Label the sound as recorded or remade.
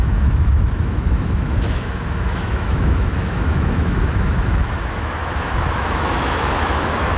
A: remade